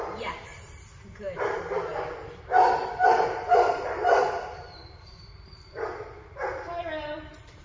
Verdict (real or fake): fake